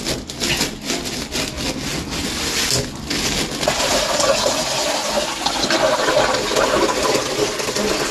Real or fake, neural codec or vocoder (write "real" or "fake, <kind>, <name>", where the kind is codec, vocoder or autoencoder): real